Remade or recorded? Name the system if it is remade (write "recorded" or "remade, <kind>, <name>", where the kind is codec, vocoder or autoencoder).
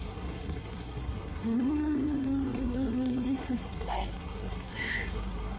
remade, codec, SNAC